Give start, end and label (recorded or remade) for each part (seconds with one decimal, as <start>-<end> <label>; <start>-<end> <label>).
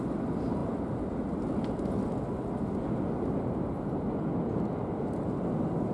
0.0-5.9 recorded